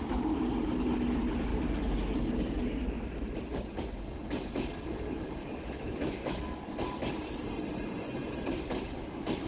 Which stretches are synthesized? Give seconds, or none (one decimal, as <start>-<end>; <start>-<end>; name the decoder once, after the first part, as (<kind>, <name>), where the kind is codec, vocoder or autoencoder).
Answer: 5.4-6.6 (autoencoder, DAC-VAE)